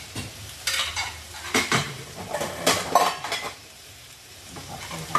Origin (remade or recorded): remade